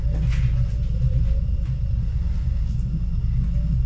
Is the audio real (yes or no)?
yes